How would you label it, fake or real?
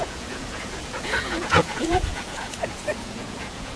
fake